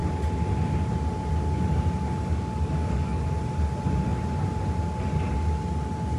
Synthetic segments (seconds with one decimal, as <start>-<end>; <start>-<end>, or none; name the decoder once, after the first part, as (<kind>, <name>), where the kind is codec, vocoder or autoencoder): 2.3-3.2 (codec, DAC)

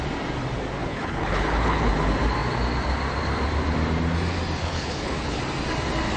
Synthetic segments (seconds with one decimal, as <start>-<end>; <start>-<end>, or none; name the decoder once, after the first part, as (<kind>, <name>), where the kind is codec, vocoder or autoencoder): 0.8-1.9 (codec, HILCodec); 4.6-5.4

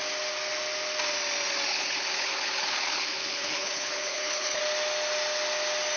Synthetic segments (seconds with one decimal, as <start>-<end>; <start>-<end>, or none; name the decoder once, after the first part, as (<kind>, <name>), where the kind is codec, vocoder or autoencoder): 1.7-4.6 (codec, HILCodec)

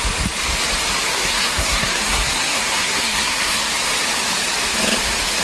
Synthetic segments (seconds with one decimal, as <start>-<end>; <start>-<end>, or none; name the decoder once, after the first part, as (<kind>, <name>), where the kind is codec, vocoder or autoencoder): 1.1-3.7 (codec, SNAC)